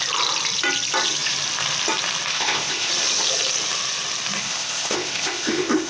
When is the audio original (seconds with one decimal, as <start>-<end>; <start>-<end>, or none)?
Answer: 0.0-2.3; 2.9-4.4